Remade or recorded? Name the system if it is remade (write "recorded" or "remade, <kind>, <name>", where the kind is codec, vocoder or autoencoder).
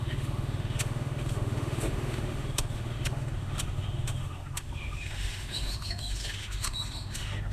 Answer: remade, autoencoder, DAC-VAE